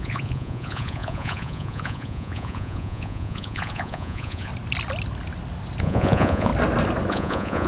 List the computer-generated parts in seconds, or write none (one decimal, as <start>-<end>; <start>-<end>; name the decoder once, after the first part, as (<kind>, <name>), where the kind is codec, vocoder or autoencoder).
0.0-4.5 (vocoder, Vocos); 5.8-6.5; 7.1-7.7